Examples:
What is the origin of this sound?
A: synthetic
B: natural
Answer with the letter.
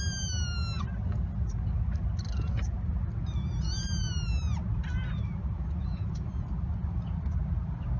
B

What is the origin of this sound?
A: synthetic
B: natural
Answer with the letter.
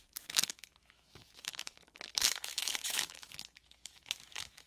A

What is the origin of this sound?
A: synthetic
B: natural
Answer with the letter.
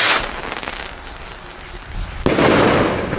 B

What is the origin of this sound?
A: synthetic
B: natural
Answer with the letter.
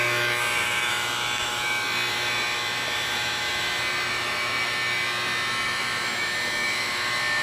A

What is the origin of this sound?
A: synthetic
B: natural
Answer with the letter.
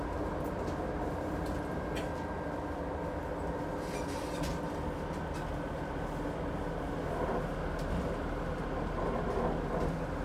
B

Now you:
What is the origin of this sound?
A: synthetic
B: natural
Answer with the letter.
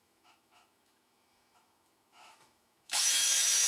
A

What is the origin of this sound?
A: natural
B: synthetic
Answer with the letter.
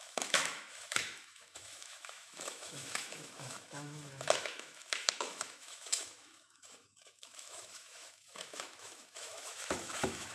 B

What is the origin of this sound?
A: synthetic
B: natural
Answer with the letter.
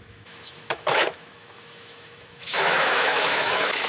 A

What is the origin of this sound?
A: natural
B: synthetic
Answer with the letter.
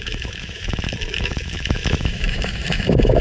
B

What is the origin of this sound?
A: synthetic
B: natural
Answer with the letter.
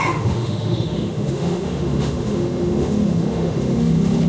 A